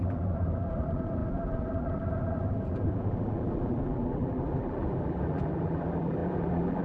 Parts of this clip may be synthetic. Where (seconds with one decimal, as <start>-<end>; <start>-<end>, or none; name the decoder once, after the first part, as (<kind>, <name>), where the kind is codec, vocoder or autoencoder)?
0.0-6.8 (vocoder, BigVGAN v2)